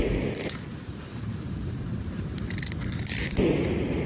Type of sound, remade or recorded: remade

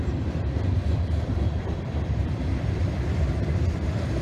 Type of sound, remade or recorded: remade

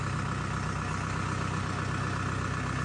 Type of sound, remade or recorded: recorded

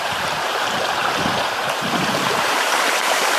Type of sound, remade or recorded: remade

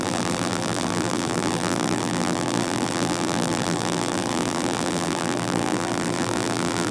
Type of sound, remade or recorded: remade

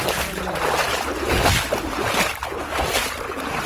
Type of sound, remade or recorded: recorded